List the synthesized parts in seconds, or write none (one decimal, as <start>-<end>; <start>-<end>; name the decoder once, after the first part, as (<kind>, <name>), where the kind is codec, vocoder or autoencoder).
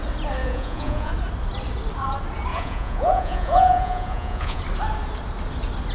0.4-1.1 (vocoder, Vocos); 2.5-4.6